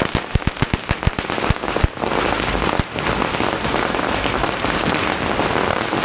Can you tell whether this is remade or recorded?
recorded